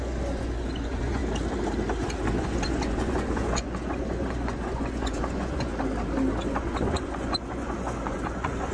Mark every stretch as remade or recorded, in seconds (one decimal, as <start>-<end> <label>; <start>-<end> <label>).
0.0-1.2 remade; 1.2-2.3 recorded; 2.3-5.7 remade; 5.7-6.5 recorded; 6.5-8.7 remade